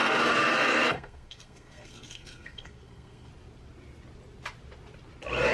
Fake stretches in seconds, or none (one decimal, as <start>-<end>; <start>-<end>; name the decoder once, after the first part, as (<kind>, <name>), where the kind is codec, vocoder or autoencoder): 0.0-3.3 (codec, SNAC)